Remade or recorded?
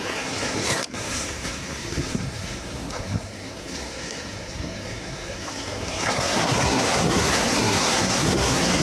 remade